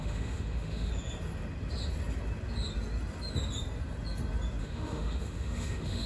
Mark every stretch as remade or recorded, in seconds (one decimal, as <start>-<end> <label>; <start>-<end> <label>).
0.0-0.9 remade; 0.9-4.6 recorded; 4.6-6.1 remade

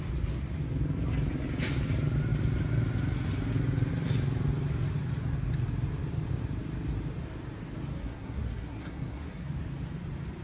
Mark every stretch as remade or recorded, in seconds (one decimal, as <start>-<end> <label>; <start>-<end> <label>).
0.0-8.0 recorded; 8.0-9.5 remade; 9.5-10.4 recorded

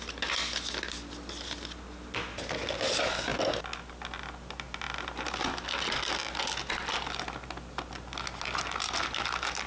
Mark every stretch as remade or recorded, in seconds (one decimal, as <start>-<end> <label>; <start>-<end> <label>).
0.0-9.7 recorded

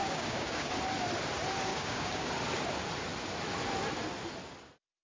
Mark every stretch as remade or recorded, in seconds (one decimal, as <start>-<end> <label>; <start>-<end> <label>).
0.0-0.7 remade; 0.7-1.7 recorded; 1.7-2.3 remade; 2.3-5.0 recorded

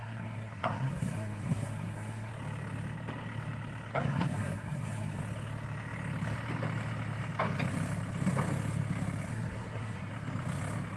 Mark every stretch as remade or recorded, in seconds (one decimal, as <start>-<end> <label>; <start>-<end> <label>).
0.0-2.3 remade; 2.3-3.9 recorded; 3.9-5.2 remade; 5.2-9.3 recorded; 9.3-10.1 remade; 10.1-11.0 recorded